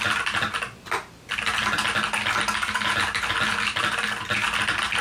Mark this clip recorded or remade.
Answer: recorded